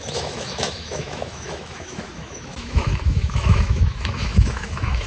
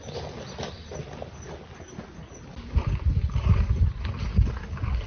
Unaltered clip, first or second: second